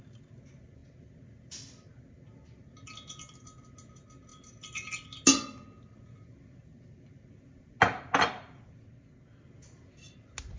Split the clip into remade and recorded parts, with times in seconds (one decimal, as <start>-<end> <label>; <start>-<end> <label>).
0.0-10.6 recorded